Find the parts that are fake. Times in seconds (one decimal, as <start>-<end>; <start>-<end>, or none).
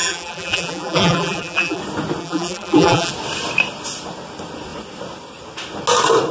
0.0-1.8; 2.2-3.1